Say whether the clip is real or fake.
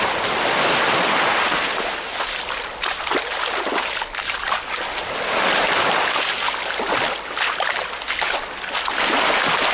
real